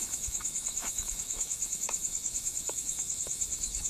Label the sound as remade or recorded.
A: remade